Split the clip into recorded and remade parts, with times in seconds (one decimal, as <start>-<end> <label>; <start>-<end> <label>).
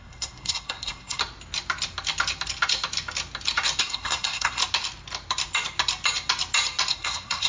0.0-1.2 remade; 1.2-3.8 recorded; 3.8-4.6 remade; 4.6-6.9 recorded; 6.9-7.5 remade